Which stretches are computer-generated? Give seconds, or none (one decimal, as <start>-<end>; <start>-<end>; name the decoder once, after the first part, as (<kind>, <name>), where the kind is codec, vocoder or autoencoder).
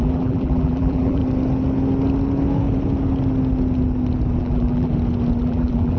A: 0.0-1.2 (vocoder, BigVGAN v2); 4.4-4.9; 5.4-6.0